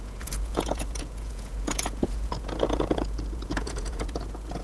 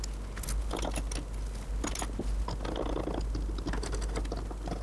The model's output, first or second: first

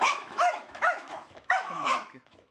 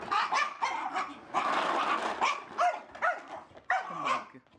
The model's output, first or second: first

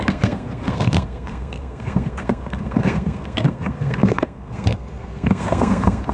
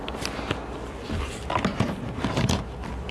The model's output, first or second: first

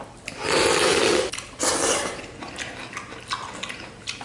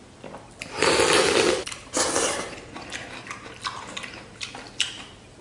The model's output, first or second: second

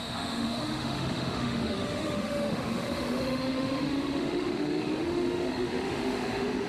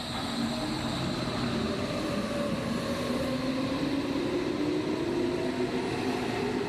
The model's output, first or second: first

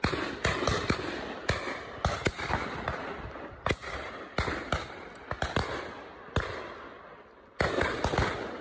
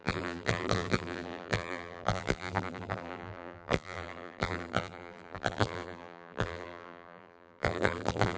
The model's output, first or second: second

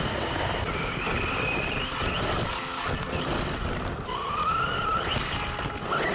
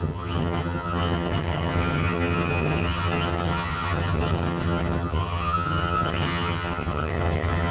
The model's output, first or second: second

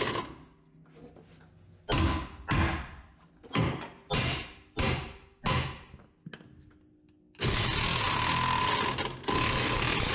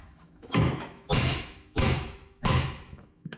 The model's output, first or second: second